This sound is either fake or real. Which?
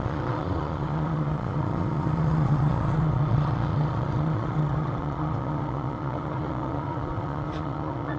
fake